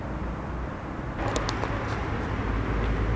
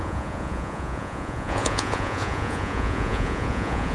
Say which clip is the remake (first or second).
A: second